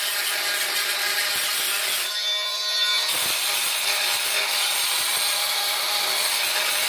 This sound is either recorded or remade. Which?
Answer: recorded